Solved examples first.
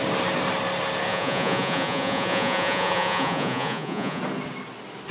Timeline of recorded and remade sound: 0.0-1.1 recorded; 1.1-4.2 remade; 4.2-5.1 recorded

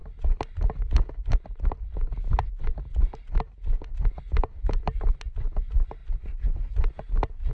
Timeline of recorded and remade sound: 0.0-7.5 recorded

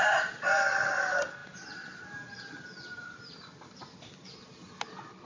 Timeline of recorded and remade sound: 0.0-5.3 recorded

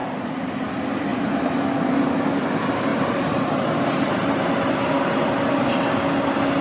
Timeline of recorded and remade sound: 0.0-0.7 remade; 0.7-2.9 recorded; 2.9-4.4 remade; 4.4-6.6 recorded

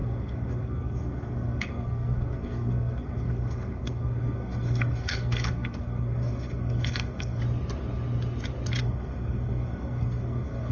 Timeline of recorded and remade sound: 0.0-7.4 remade; 7.4-8.8 recorded; 8.8-10.7 remade